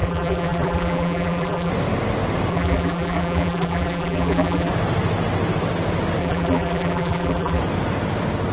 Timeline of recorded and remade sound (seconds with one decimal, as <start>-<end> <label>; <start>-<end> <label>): 0.0-1.7 remade; 1.7-2.5 recorded; 2.5-4.7 remade; 4.7-6.2 recorded; 6.2-7.6 remade; 7.6-8.5 recorded